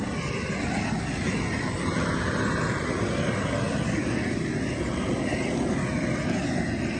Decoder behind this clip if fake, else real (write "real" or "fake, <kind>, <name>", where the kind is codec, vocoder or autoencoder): real